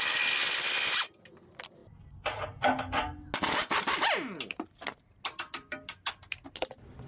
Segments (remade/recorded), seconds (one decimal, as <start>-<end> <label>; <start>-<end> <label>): 0.0-7.1 recorded